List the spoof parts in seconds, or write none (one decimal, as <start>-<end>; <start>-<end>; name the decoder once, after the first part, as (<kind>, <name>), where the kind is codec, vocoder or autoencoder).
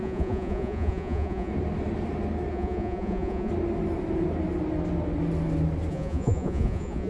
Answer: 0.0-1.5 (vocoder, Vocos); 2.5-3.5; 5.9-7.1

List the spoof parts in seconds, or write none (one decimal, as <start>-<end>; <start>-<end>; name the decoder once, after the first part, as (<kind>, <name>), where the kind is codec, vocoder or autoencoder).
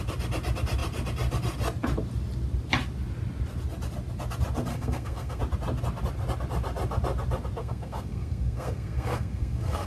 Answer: 4.7-5.4 (codec, SNAC); 7.6-9.9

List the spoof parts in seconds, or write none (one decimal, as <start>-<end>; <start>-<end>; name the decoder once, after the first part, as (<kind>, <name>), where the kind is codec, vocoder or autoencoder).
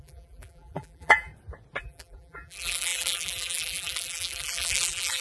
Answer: 0.0-1.3 (vocoder, BigVGAN v2); 1.8-5.2